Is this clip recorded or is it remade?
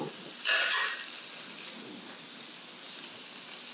recorded